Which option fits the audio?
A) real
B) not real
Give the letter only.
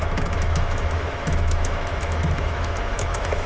B